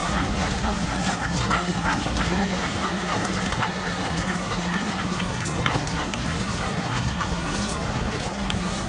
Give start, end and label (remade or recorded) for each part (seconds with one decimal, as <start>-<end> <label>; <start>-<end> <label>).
0.0-8.9 remade